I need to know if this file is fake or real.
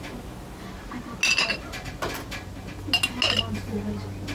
real